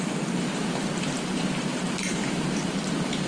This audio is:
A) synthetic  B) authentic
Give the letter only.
A